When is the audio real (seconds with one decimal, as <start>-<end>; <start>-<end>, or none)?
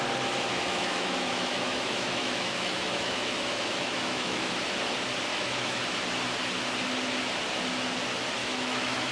0.0-0.5; 4.5-5.3; 5.8-8.4